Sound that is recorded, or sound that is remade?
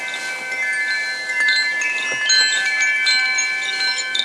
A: recorded